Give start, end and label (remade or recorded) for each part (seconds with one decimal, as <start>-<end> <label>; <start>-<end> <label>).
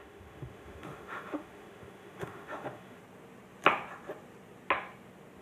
0.0-3.0 remade; 3.0-5.4 recorded